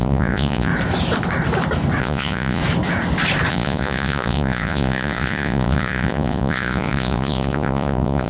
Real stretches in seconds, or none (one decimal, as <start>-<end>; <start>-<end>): 0.7-2.0; 2.6-3.5